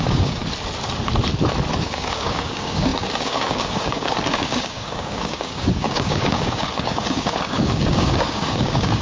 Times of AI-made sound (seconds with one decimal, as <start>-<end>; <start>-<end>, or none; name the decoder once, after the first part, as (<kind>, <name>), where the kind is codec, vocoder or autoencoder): 0.0-0.4 (codec, DAC); 1.8-9.0